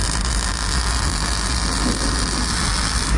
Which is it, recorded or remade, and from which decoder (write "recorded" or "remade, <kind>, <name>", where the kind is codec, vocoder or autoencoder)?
recorded